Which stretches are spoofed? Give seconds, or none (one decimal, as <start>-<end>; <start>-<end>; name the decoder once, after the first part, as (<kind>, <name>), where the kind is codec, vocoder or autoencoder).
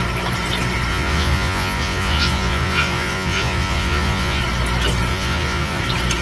0.9-4.4 (vocoder, Vocos); 5.1-5.8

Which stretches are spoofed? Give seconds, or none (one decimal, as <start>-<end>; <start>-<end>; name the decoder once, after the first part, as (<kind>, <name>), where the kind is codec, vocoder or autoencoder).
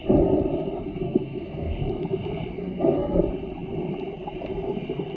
0.9-1.8 (codec, SNAC); 2.6-3.2